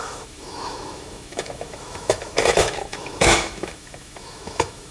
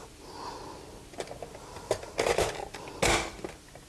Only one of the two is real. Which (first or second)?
second